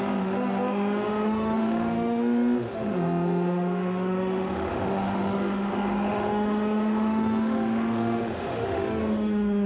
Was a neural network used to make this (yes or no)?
yes